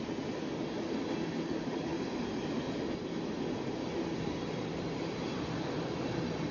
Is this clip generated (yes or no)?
no